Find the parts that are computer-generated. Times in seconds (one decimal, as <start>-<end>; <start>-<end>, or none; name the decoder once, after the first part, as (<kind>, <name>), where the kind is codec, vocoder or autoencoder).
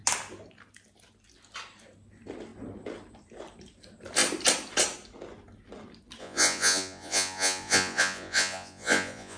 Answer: 6.2-9.4 (vocoder, Vocos)